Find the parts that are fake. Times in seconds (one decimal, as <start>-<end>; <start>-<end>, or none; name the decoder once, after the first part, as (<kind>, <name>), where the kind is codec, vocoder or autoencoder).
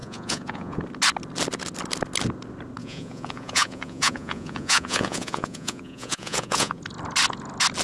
0.0-0.8 (vocoder, Vocos); 2.8-6.8